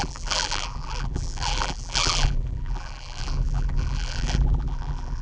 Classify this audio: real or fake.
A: fake